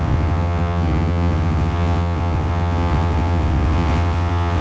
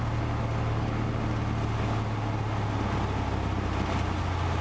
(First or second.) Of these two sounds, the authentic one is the second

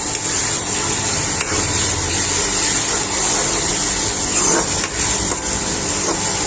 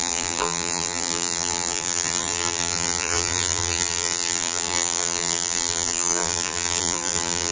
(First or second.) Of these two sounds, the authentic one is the first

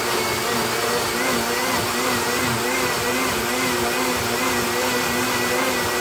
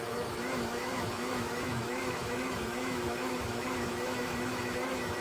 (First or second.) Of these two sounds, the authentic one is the first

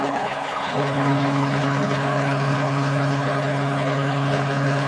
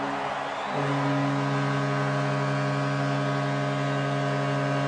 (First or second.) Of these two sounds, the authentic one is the second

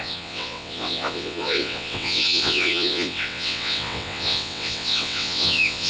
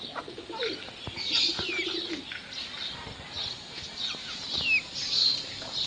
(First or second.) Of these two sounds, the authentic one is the second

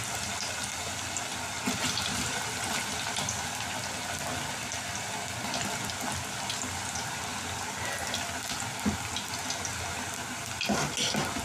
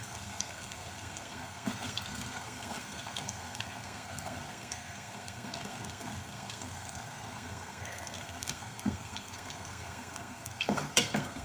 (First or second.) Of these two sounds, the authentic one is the first